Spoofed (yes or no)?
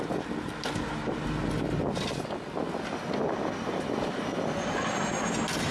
no